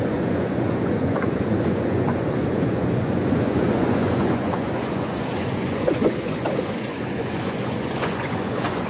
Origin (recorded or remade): remade